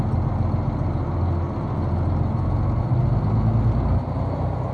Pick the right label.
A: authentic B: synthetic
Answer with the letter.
A